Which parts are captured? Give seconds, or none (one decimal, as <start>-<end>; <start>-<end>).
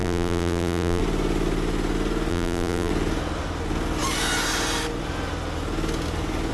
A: 1.0-2.3; 2.9-6.5